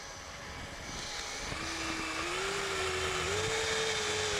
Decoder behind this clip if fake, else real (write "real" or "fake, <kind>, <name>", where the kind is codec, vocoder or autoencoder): real